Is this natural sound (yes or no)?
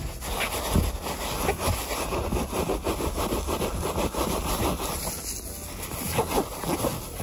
yes